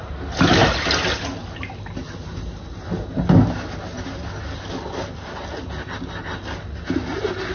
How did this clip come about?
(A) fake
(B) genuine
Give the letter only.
B